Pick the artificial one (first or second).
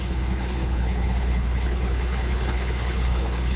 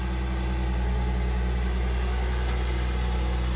first